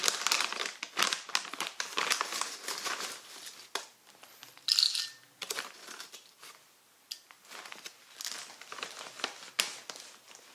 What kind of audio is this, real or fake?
real